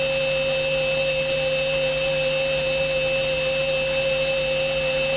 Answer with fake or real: real